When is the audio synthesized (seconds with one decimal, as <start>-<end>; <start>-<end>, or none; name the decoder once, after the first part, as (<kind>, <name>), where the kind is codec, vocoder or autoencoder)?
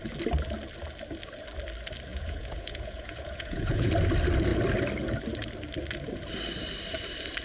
2.1-3.9 (vocoder, Vocos)